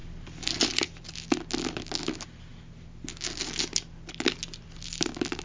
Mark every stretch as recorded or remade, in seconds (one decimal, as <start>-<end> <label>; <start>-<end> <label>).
0.0-5.4 recorded